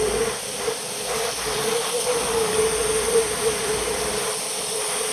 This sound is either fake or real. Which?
real